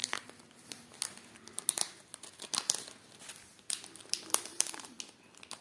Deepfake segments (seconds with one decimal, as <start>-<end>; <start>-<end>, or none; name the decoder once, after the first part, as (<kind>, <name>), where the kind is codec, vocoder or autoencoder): 4.5-5.0 (vocoder, BigVGAN v2)